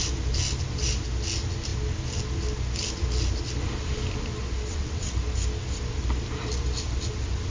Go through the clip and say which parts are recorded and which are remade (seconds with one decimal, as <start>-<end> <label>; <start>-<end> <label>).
0.0-4.7 recorded; 4.7-5.2 remade; 5.2-7.5 recorded